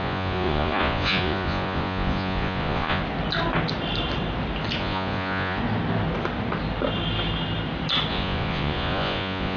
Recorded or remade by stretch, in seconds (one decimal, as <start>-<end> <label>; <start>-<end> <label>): 0.0-3.0 remade; 3.0-4.8 recorded; 4.8-5.6 remade; 5.6-8.1 recorded; 8.1-9.6 remade